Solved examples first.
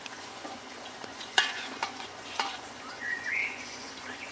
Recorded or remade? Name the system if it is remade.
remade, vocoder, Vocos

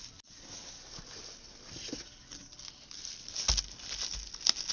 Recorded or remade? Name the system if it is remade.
recorded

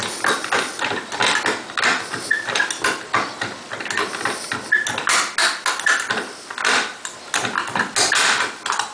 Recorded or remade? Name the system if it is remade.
recorded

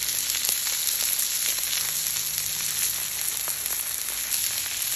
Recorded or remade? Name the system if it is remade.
recorded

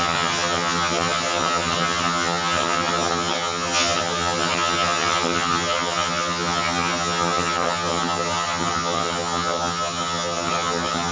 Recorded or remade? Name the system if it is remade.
remade, vocoder, HiFi-GAN